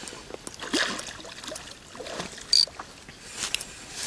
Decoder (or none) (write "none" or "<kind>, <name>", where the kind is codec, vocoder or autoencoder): none